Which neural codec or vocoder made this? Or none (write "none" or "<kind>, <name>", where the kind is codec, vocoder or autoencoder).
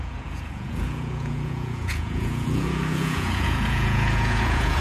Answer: vocoder, Vocos